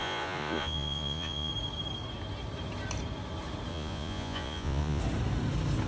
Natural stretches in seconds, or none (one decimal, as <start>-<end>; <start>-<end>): 1.5-3.7; 5.0-5.9